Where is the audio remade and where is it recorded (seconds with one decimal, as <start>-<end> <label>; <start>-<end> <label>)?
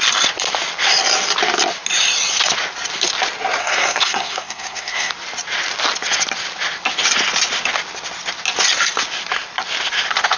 0.0-3.6 recorded; 3.6-5.1 remade; 5.1-10.4 recorded